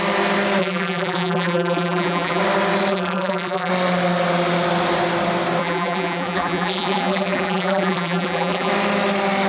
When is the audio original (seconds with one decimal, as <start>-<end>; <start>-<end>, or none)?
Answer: 0.0-0.6; 2.4-2.9; 3.7-5.6; 8.7-9.5